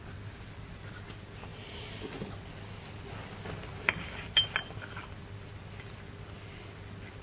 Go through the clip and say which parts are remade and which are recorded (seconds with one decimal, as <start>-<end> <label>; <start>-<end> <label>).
0.0-7.2 recorded